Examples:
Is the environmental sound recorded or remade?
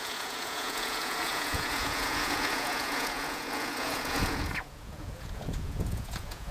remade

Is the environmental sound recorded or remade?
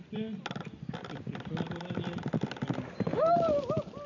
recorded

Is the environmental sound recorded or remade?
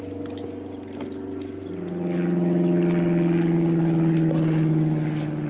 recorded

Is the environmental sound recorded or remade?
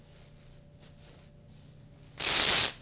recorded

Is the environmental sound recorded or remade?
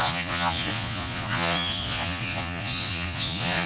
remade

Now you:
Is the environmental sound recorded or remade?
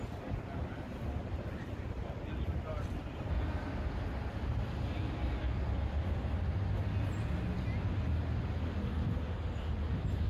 recorded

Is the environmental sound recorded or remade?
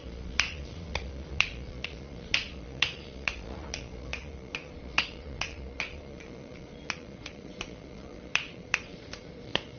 remade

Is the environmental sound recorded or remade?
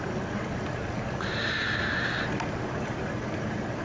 recorded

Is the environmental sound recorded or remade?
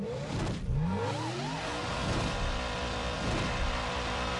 recorded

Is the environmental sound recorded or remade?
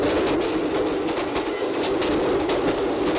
recorded